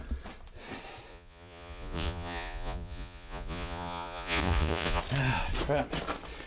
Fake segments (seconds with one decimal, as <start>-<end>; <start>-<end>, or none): 1.1-5.0